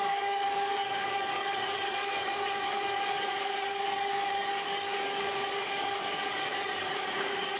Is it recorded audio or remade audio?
remade